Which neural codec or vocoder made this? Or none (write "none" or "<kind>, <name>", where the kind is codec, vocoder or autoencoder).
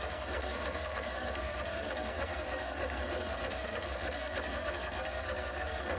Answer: codec, SNAC